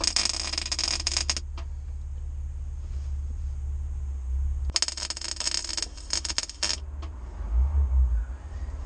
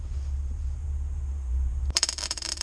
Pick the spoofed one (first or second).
second